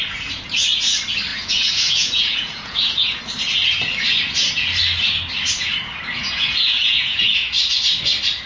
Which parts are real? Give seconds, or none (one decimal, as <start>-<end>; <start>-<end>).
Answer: 0.0-1.3; 3.2-6.2; 7.5-8.5